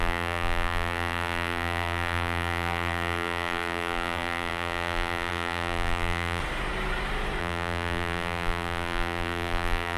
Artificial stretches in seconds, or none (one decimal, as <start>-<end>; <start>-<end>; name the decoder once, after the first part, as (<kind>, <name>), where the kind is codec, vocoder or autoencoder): 0.0-6.4 (vocoder, BigVGAN v2); 7.4-10.0